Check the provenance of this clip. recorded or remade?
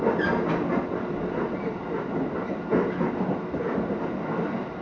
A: recorded